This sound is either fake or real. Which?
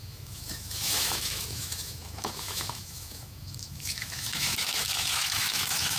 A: fake